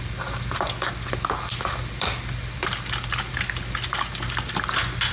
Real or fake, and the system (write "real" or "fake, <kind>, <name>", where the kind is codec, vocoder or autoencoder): real